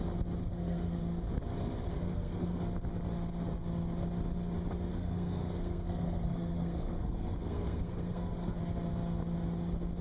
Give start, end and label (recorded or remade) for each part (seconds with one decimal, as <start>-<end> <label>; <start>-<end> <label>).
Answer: 0.0-0.4 recorded; 0.4-1.0 remade; 1.0-1.9 recorded; 1.9-2.6 remade; 2.6-4.9 recorded; 4.9-8.6 remade; 8.6-10.0 recorded